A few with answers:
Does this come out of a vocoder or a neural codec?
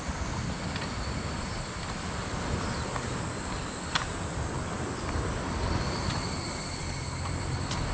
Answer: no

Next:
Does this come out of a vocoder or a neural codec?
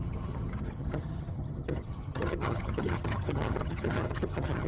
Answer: yes